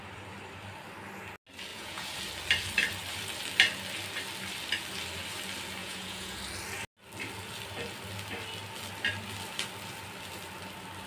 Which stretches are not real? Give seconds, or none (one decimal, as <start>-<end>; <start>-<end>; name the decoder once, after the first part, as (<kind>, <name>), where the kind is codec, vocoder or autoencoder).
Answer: 1.7-2.2 (vocoder, Vocos); 5.8-6.4

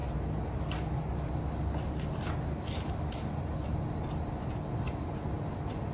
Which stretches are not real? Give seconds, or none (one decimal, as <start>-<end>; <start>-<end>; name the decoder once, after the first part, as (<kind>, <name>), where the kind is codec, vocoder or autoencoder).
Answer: none

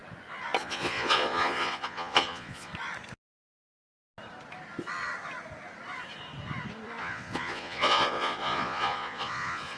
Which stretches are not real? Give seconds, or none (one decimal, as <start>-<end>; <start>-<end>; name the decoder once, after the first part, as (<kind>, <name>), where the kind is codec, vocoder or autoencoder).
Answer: 0.6-2.7 (vocoder, Vocos); 7.0-9.8

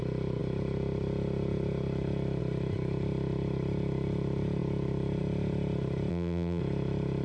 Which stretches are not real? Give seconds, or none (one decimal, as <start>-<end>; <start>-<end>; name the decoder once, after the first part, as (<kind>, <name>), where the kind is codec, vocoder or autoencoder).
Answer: 6.1-6.6 (vocoder, BigVGAN v2)

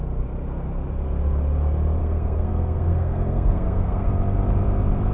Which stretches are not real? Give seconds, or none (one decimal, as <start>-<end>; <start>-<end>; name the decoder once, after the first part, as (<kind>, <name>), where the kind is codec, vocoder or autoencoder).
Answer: 2.0-4.1 (codec, SNAC)

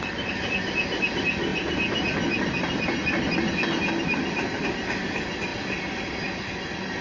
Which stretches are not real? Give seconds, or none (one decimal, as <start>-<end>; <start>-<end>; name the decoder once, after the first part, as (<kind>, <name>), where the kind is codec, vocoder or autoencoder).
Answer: 5.5-6.5 (vocoder, BigVGAN v2)